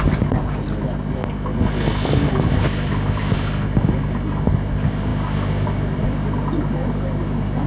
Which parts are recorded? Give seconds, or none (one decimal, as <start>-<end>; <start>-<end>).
0.0-7.7